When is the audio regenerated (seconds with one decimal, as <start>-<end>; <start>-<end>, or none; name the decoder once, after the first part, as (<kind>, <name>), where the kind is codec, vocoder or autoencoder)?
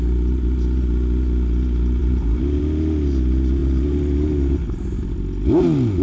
2.0-2.6 (vocoder, BigVGAN v2); 3.6-5.0